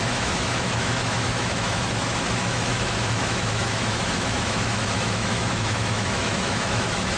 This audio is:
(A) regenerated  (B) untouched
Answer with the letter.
A